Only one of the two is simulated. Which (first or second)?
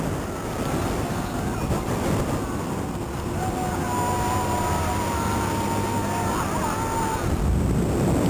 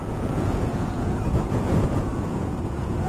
second